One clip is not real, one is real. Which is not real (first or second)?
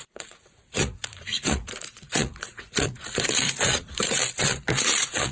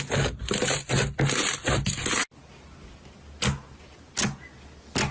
first